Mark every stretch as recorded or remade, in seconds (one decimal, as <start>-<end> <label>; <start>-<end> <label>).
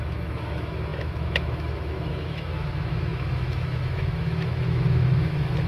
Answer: 0.0-5.7 remade